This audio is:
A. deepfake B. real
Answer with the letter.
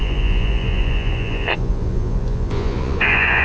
A